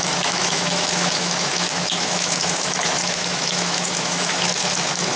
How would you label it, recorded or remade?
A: remade